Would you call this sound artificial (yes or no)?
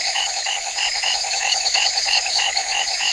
yes